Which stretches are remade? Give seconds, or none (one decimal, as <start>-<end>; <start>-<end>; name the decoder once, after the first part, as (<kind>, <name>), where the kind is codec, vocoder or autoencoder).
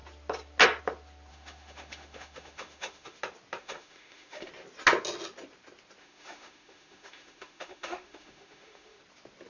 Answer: 1.3-3.2 (autoencoder, DAC-VAE); 3.6-4.5; 6.0-9.0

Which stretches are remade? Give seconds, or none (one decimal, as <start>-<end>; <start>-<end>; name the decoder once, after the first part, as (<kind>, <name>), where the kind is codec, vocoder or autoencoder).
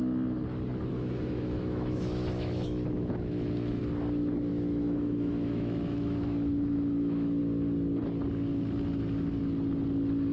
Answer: 0.9-3.8 (autoencoder, DAC-VAE); 4.5-7.4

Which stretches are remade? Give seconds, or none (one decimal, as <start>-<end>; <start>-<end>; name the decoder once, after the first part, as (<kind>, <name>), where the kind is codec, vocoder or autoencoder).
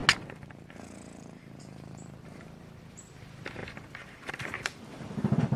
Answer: 1.6-5.6 (vocoder, BigVGAN v2)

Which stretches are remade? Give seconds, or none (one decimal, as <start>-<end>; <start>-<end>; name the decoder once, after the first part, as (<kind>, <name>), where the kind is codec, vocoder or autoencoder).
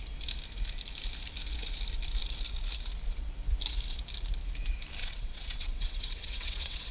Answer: 5.0-6.9 (vocoder, WaveNeXt)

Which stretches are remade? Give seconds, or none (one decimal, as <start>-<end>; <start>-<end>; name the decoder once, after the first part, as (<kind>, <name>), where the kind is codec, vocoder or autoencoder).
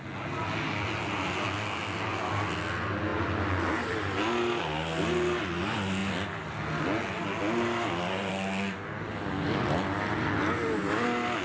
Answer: none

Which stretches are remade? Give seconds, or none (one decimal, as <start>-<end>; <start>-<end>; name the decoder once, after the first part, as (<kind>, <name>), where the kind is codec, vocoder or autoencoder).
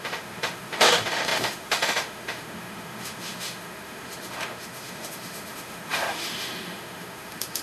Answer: 0.0-7.6 (autoencoder, DAC-VAE)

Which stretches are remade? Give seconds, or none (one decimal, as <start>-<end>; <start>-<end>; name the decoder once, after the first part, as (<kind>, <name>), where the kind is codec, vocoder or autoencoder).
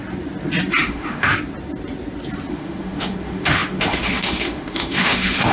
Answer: 0.8-1.3 (autoencoder, DAC-VAE); 2.5-5.5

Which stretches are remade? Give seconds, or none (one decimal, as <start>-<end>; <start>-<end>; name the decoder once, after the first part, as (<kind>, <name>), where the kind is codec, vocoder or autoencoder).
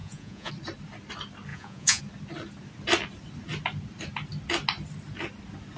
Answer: 0.0-0.5 (vocoder, Vocos); 1.5-2.0